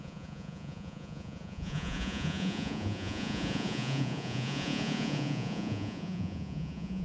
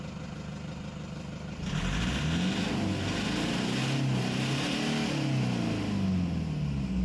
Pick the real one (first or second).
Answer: second